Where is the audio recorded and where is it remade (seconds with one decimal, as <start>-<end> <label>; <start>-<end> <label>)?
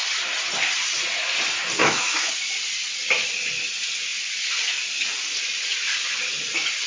0.0-1.8 recorded; 1.8-2.3 remade; 2.3-6.9 recorded